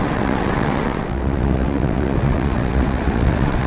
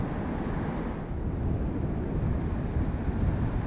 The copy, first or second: first